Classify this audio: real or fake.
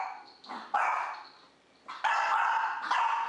real